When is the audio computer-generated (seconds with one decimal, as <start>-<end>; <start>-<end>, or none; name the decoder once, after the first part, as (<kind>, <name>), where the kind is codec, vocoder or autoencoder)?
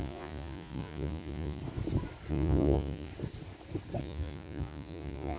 0.0-1.6 (vocoder, Vocos); 2.3-3.1; 4.0-5.4